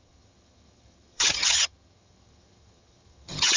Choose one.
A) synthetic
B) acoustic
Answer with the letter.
A